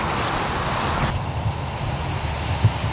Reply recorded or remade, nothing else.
recorded